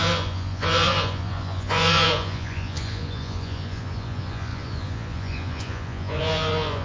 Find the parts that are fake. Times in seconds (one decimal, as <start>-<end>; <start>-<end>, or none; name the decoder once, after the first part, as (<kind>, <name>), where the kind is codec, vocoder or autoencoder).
0.0-6.8 (vocoder, Vocos)